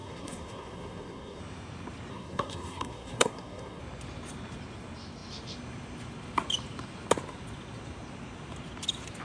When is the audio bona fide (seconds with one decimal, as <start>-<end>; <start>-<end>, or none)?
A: 1.4-2.1; 3.8-9.2

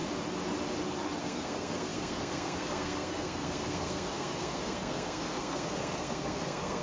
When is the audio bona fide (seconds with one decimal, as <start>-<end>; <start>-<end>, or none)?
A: 0.0-1.2

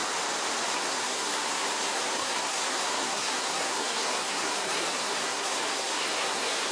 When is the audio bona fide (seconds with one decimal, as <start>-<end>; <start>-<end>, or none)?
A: 0.0-0.7

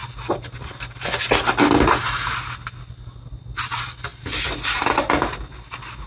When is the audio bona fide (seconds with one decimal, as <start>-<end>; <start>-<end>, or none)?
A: 0.0-6.1

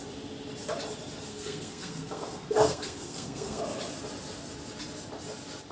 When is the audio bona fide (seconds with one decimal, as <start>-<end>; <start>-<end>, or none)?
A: 0.0-1.3; 3.6-5.7